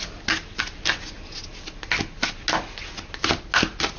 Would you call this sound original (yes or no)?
yes